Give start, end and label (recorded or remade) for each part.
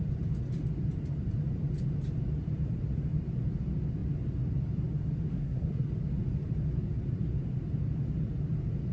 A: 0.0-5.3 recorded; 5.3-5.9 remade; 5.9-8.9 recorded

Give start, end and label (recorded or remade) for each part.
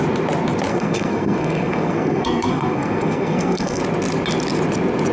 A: 0.0-0.7 recorded; 0.7-3.8 remade; 3.8-5.1 recorded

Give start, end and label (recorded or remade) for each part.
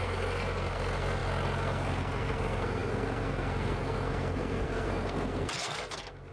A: 0.0-6.3 remade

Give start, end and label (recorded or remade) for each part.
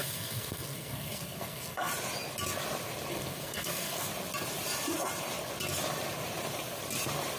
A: 0.0-1.9 remade; 1.9-3.1 recorded; 3.1-4.1 remade; 4.1-7.4 recorded